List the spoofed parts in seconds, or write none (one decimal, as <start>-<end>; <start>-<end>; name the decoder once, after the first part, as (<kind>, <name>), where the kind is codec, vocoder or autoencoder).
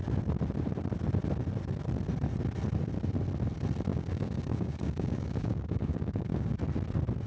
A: 3.9-6.6 (codec, DAC)